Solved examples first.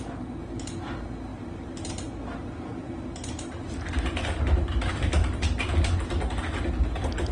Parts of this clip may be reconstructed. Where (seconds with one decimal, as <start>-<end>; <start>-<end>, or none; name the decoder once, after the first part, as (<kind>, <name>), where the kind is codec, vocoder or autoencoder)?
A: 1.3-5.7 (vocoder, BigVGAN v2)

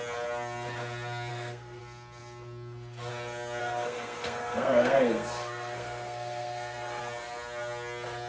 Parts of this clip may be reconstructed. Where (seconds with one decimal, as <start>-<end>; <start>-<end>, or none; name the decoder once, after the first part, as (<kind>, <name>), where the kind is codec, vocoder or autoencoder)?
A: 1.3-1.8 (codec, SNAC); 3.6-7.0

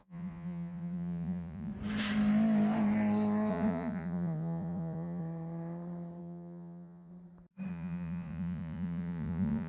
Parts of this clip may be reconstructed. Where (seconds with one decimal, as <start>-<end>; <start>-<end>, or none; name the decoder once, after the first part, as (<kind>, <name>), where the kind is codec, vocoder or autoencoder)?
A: 0.0-1.7 (vocoder, Vocos); 3.5-5.2; 6.2-7.1; 7.7-9.7

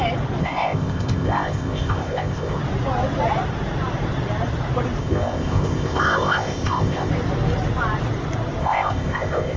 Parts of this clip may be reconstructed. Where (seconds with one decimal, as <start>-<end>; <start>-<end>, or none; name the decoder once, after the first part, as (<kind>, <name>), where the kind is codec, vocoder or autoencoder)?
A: 0.4-2.6 (codec, ZipCodec); 5.0-7.1; 8.6-9.6